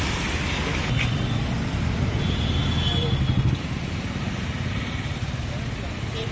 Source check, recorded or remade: recorded